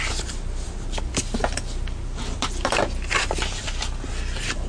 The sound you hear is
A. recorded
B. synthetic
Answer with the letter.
A